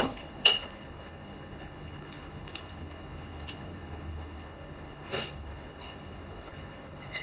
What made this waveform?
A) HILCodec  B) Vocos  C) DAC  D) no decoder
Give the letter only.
A